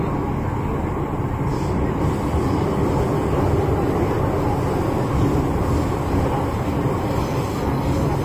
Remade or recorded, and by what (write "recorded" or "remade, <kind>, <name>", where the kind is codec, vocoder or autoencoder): recorded